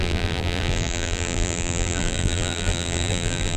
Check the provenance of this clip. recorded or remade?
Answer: remade